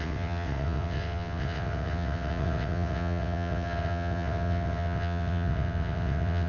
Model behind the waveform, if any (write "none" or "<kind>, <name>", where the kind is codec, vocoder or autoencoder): vocoder, WaveNeXt